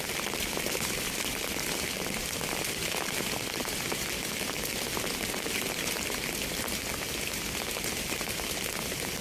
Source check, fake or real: real